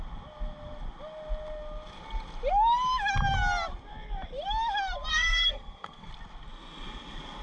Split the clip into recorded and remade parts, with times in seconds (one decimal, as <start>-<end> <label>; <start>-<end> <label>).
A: 0.0-5.1 recorded; 5.1-6.1 remade; 6.1-7.4 recorded